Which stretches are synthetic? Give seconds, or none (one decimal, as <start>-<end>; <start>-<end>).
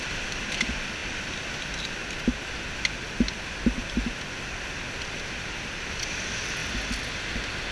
0.0-1.0; 4.2-6.6